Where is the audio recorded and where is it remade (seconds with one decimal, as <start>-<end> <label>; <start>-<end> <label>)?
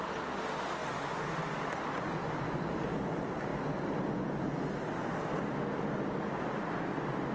0.0-0.8 recorded; 0.8-2.4 remade; 2.4-7.3 recorded